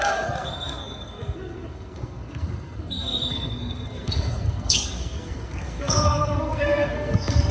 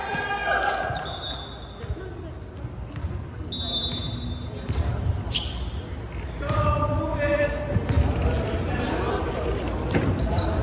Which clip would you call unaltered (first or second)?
second